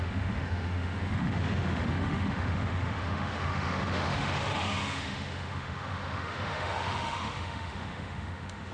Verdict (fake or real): fake